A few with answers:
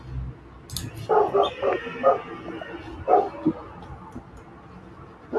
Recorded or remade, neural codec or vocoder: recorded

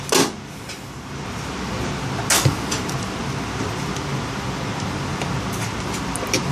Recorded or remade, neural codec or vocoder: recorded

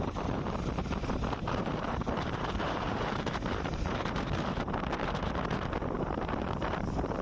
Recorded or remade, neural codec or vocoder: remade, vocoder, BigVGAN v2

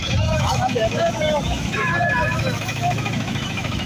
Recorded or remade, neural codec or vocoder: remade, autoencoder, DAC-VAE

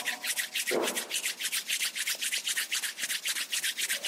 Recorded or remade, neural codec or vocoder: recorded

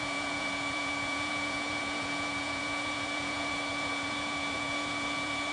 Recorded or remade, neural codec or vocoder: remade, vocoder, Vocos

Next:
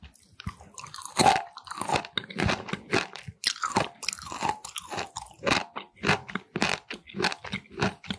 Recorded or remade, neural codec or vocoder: recorded